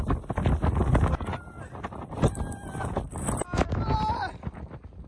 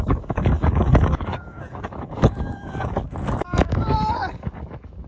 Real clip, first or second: first